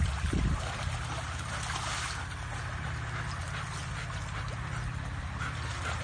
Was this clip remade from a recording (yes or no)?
no